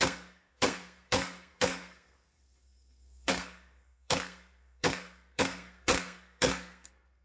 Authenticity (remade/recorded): remade